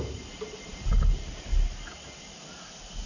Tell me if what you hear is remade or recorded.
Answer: recorded